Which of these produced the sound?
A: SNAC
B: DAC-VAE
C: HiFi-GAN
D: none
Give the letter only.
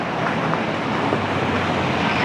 D